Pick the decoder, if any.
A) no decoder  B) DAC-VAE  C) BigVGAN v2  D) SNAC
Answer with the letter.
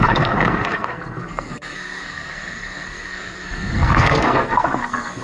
D